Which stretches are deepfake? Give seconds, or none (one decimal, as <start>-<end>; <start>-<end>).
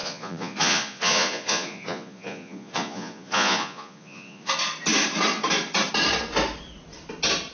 0.0-4.5